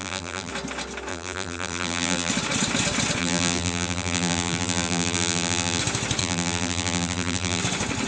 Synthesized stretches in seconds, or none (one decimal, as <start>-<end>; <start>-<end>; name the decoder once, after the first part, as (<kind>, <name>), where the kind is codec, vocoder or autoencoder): 0.0-0.5 (vocoder, BigVGAN v2); 1.1-2.3; 3.2-5.8; 6.2-7.6